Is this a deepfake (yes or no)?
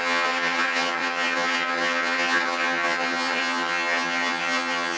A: yes